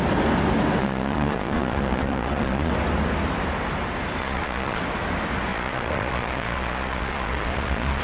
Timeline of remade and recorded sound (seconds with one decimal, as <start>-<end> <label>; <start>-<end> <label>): 0.0-0.8 recorded; 0.8-2.7 remade; 2.7-4.2 recorded; 4.2-4.8 remade; 4.8-5.5 recorded; 5.5-8.0 remade